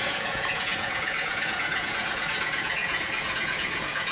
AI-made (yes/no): yes